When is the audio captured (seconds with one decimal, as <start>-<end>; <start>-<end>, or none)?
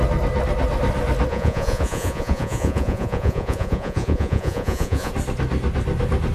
0.0-1.3; 5.1-6.3